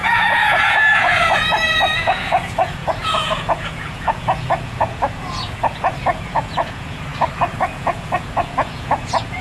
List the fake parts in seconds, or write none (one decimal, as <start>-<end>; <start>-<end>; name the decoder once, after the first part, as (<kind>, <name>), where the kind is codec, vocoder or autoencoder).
0.0-7.1 (vocoder, Vocos); 7.6-9.4